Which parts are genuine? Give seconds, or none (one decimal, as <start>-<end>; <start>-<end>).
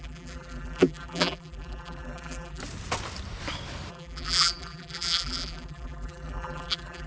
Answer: 2.6-3.9